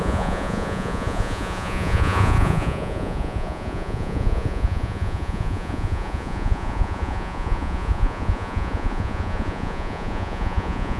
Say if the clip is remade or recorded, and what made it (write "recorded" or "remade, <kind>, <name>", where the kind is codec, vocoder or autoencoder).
remade, vocoder, Vocos